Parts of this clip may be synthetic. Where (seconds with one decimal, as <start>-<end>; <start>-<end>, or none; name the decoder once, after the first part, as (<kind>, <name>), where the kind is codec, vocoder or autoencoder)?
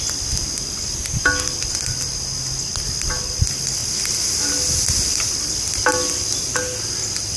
none